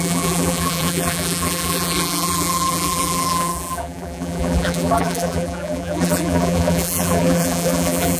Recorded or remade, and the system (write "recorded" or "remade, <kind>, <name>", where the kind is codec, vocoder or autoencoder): remade, vocoder, BigVGAN v2